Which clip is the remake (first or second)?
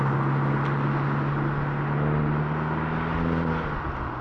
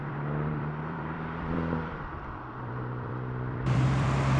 second